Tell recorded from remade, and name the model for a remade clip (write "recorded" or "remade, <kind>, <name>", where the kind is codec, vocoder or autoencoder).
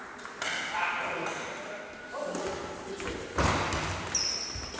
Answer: recorded